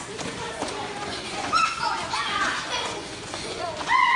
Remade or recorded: remade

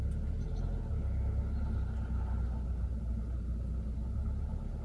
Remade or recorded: recorded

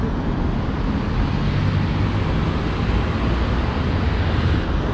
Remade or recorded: recorded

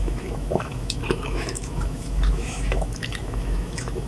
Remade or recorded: remade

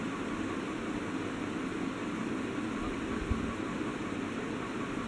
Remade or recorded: recorded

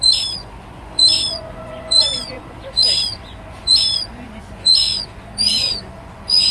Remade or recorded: remade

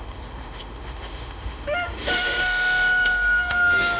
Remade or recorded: remade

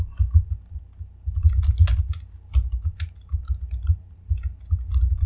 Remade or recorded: recorded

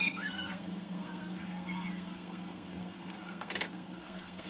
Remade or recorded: remade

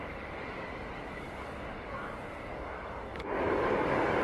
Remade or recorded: remade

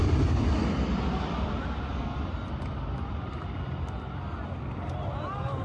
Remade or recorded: recorded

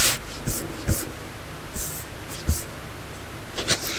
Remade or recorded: recorded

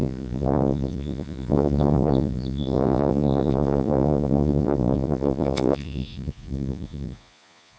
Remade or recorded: remade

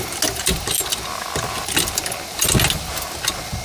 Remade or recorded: recorded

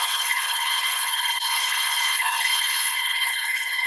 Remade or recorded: remade